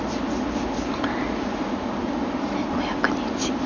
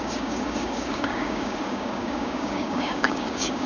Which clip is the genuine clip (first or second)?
first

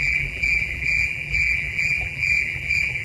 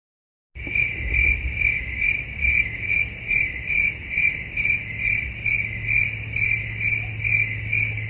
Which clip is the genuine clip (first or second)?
second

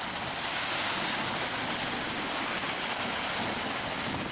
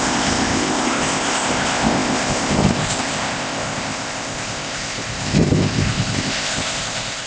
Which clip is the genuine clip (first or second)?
first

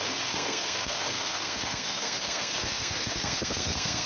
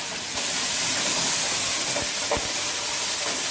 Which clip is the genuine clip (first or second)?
second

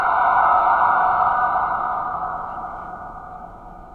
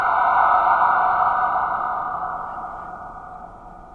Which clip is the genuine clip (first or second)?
second